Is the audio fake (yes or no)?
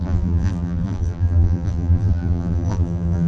yes